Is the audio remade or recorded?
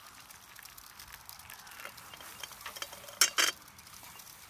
recorded